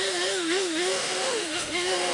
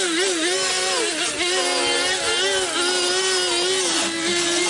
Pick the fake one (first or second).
first